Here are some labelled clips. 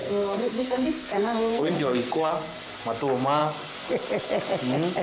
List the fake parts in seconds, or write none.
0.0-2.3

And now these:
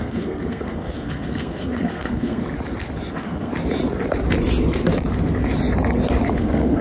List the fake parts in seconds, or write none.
0.0-2.4; 3.1-3.5; 6.3-6.8